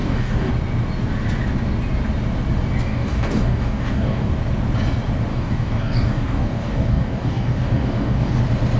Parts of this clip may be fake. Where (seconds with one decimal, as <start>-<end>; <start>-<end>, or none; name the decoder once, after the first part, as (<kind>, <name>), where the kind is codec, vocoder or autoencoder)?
0.0-0.5 (codec, DAC); 2.9-4.3; 5.3-8.4